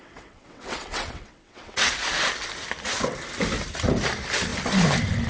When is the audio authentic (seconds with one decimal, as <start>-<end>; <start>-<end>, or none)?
1.9-5.3